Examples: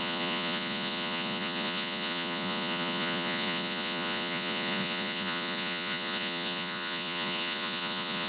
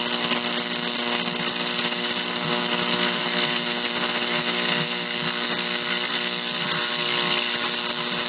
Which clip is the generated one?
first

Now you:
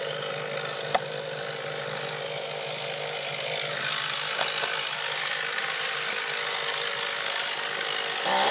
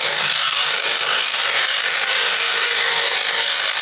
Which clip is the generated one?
second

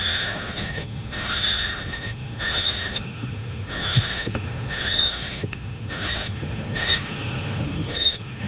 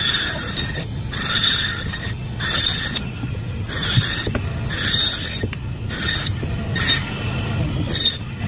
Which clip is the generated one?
first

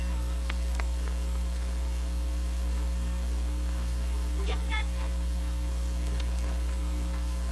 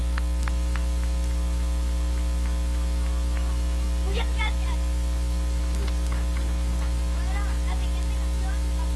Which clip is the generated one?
first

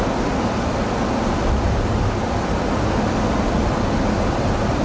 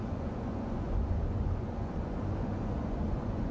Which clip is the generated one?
second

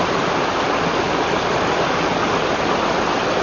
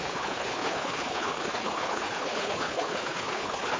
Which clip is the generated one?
second